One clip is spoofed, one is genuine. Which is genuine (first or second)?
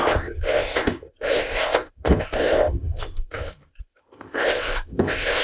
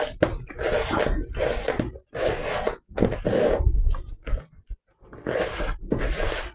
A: second